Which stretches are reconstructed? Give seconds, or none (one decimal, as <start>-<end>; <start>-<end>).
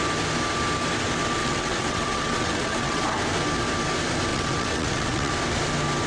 1.4-3.0; 4.3-5.3